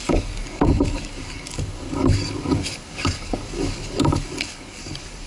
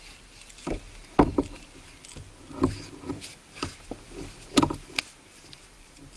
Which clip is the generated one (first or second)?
first